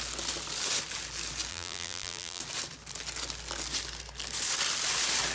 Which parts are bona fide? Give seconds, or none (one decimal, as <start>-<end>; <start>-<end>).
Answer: 0.0-1.5; 2.4-5.3